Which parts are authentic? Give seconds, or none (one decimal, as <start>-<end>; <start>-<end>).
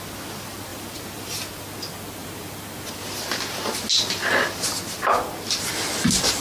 0.0-0.7; 1.3-6.4